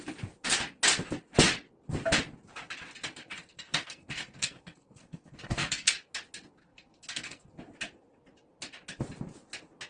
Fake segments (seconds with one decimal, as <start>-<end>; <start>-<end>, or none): 3.2-5.9; 6.6-7.5